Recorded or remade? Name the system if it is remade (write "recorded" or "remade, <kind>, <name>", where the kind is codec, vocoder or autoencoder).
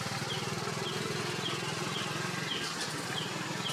recorded